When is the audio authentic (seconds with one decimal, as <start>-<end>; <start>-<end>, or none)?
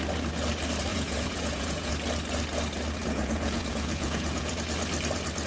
0.0-0.9; 1.9-3.0; 4.5-5.5